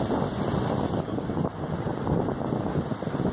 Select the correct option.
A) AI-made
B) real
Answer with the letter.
B